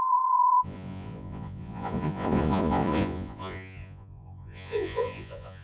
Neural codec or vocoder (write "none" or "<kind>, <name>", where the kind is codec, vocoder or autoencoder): vocoder, Vocos